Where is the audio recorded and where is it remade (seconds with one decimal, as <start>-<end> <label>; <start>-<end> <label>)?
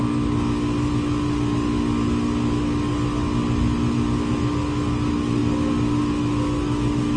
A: 0.0-4.3 recorded; 4.3-7.2 remade